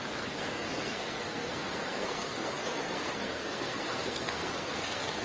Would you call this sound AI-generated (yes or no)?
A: yes